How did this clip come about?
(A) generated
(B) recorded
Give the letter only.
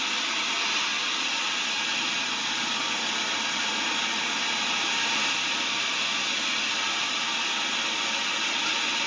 B